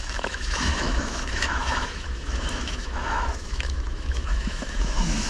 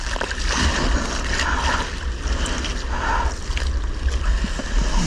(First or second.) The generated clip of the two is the first